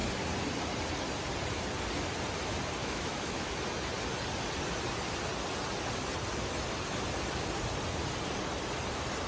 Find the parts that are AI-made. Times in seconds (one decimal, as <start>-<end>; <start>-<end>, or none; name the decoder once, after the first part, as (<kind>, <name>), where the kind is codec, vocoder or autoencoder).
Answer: 2.8-3.5 (autoencoder, DAC-VAE)